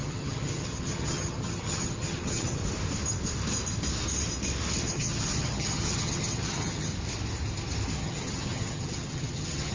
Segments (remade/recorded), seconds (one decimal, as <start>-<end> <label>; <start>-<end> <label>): 0.0-2.6 remade; 2.6-4.8 recorded; 4.8-6.9 remade; 6.9-7.9 recorded; 7.9-9.7 remade